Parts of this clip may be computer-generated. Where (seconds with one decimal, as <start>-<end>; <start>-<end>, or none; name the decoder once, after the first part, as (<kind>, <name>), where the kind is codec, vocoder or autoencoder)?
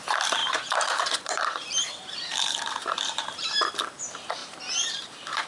0.4-3.7 (vocoder, BigVGAN v2); 4.4-5.0